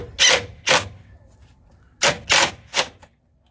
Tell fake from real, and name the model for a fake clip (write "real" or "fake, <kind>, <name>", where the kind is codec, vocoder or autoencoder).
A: real